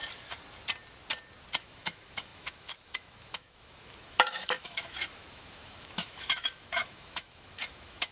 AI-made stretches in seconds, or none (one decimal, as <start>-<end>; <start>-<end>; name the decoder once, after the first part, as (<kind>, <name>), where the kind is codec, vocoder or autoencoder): 1.6-8.1 (autoencoder, DAC-VAE)